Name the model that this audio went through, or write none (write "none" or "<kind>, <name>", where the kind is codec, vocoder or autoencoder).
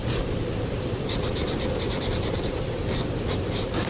vocoder, BigVGAN v2